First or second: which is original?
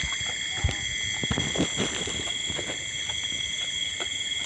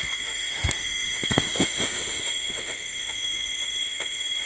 first